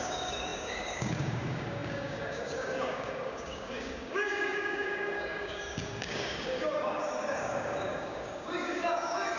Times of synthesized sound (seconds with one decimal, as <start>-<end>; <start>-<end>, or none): 0.0-9.4